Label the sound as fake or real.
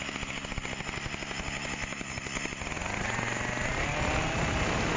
real